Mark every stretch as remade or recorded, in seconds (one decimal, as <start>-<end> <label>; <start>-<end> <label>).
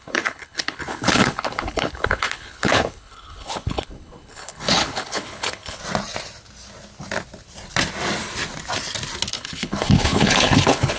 0.0-5.8 remade; 5.8-9.3 recorded; 9.3-11.0 remade